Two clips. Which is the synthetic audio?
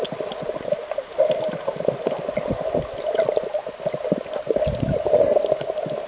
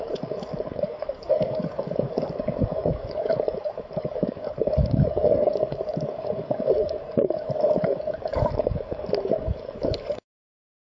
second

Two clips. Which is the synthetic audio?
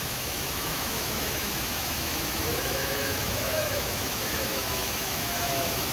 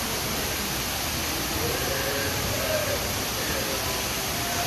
first